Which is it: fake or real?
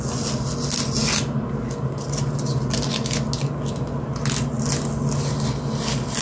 real